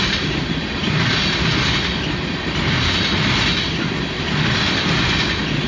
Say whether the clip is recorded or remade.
recorded